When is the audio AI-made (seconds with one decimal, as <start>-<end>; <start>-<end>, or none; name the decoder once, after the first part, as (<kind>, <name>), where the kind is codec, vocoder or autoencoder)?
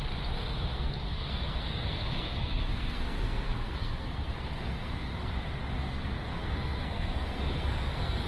0.7-5.3 (codec, SNAC); 5.8-8.3